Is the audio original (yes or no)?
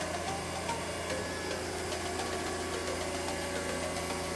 yes